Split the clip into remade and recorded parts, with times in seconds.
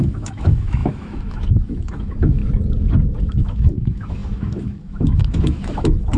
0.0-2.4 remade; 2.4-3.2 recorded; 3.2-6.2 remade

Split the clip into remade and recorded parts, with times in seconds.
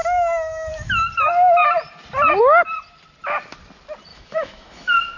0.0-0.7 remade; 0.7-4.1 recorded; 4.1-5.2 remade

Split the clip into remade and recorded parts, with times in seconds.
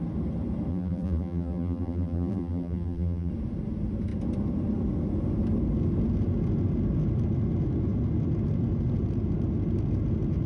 0.0-0.7 recorded; 0.7-3.3 remade; 3.3-10.5 recorded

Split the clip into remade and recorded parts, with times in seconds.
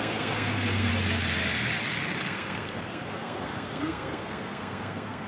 0.0-0.9 remade; 0.9-2.2 recorded; 2.2-5.3 remade